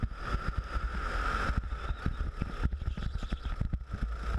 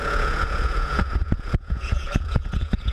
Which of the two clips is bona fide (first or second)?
first